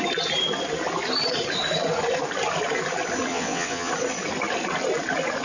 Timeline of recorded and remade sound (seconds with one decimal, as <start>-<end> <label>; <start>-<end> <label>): 0.0-3.3 recorded; 3.3-3.9 remade; 3.9-5.4 recorded